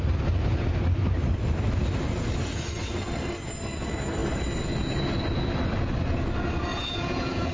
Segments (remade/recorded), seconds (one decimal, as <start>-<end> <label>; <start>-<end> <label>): 0.0-6.7 recorded; 6.7-7.5 remade